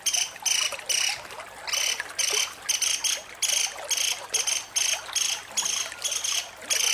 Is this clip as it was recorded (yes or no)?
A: yes